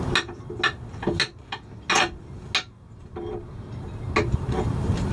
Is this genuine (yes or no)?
yes